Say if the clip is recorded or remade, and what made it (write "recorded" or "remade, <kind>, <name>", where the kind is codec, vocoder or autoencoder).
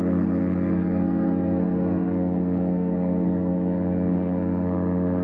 remade, codec, SNAC